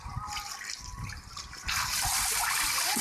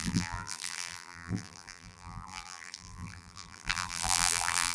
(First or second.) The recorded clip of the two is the first